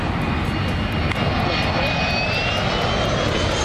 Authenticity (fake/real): real